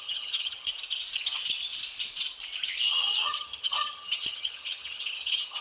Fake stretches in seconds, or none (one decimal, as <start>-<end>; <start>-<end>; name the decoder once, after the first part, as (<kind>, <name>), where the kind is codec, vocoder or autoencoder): 0.0-0.7 (vocoder, HiFi-GAN); 2.9-5.6